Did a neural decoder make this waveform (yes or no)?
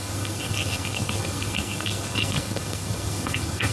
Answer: yes